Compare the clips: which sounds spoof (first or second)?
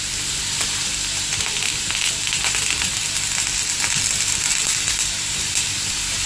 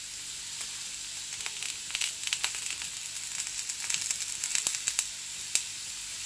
first